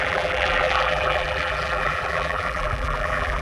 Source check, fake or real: fake